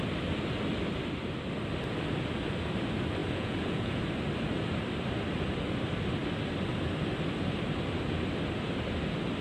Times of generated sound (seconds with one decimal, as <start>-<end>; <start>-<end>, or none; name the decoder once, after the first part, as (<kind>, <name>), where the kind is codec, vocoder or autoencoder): 3.2-4.0 (vocoder, Vocos)